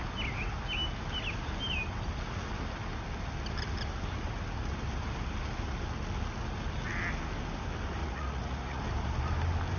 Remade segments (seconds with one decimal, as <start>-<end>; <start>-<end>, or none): 8.0-8.8